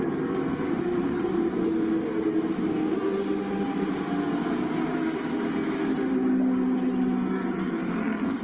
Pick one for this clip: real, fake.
real